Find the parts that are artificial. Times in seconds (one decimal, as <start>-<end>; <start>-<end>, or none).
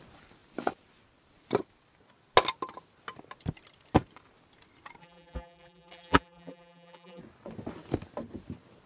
5.0-7.2